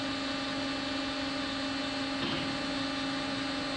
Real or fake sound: real